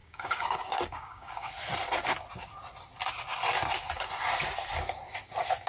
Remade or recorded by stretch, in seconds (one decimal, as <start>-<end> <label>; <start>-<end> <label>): 0.0-1.5 remade; 1.5-5.7 recorded